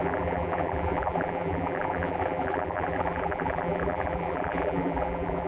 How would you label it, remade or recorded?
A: remade